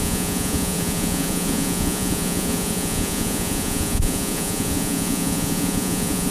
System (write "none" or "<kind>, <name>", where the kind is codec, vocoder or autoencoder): vocoder, Vocos